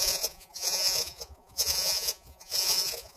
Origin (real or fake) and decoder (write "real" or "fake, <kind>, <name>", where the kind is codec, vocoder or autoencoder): fake, vocoder, Vocos